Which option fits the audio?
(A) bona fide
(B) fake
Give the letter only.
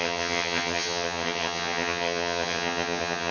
B